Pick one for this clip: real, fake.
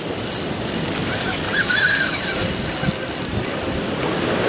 real